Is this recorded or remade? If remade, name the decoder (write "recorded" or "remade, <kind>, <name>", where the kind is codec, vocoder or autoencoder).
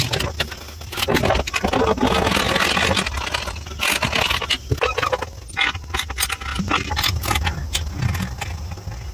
recorded